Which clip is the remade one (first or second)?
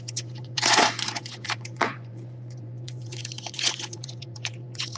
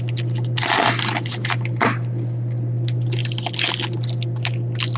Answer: first